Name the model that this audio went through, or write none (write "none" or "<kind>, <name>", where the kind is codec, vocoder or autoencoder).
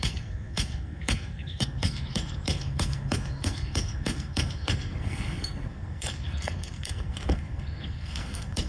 codec, SNAC